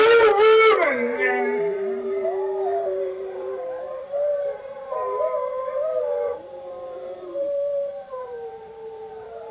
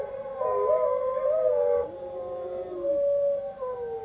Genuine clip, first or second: second